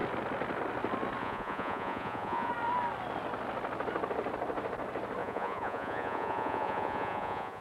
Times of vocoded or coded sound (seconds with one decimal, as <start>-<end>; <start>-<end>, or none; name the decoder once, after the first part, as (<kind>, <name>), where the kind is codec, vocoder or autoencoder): 1.2-2.5 (vocoder, Vocos); 5.2-7.6